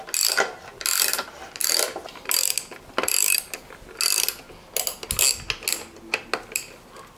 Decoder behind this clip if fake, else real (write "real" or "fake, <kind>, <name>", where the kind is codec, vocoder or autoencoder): real